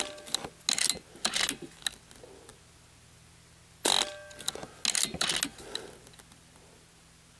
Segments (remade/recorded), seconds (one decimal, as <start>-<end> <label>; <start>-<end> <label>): 0.0-7.4 recorded

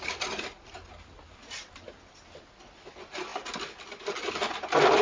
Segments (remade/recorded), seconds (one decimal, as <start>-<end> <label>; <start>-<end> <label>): 0.0-5.0 recorded